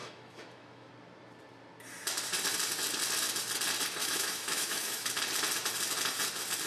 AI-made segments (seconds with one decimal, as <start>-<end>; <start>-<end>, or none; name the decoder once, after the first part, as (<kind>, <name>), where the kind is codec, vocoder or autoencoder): 0.0-0.9 (autoencoder, DAC-VAE); 4.0-5.1